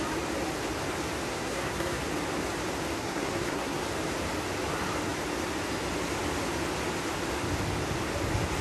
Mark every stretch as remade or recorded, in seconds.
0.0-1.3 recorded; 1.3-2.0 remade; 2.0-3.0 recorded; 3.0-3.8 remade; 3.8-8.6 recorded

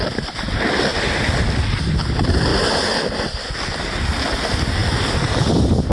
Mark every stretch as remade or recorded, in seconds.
0.0-5.9 recorded

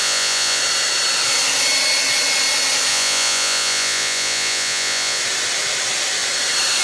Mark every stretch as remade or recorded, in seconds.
0.0-0.6 remade; 0.6-2.9 recorded; 2.9-5.2 remade; 5.2-6.8 recorded

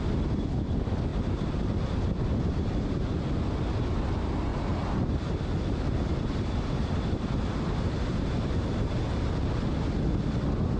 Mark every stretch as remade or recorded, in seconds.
0.0-4.5 recorded; 4.5-9.7 remade; 9.7-10.8 recorded

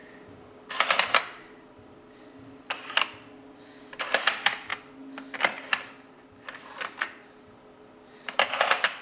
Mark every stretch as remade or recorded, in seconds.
0.0-9.0 recorded

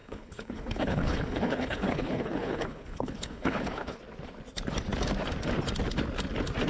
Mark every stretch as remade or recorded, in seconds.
0.0-4.0 remade; 4.0-6.7 recorded